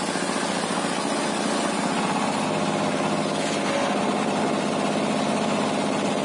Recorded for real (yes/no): yes